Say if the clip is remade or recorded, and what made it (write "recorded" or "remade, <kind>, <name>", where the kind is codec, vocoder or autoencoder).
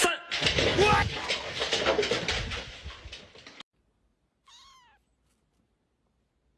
recorded